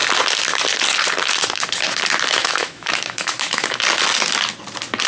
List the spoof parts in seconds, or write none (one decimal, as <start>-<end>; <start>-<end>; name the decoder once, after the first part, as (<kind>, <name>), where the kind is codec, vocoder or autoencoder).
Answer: 2.4-3.8 (autoencoder, DAC-VAE)